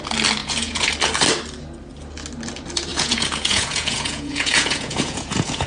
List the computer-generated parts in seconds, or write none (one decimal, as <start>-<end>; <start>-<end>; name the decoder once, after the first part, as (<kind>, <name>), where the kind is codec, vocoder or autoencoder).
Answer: 0.4-0.9 (vocoder, Vocos); 2.9-5.7